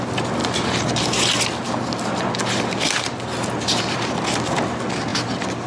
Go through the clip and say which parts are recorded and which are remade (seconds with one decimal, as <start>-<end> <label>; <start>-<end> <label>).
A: 0.0-5.7 recorded